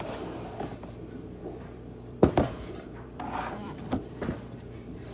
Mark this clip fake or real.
fake